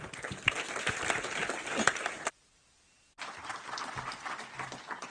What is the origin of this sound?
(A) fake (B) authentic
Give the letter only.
B